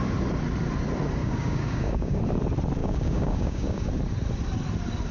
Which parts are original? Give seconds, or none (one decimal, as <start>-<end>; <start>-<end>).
0.0-1.2; 2.2-2.8; 3.9-5.1